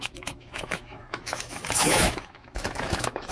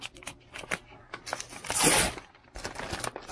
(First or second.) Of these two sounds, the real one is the second